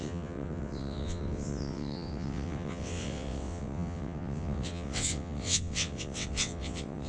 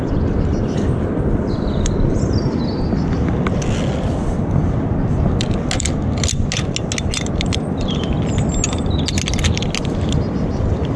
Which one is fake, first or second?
first